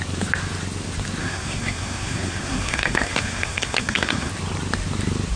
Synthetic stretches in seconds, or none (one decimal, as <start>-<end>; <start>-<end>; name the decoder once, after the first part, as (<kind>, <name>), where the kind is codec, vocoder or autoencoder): 1.2-4.3 (codec, SNAC)